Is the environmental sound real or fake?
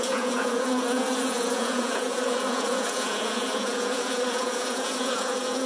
fake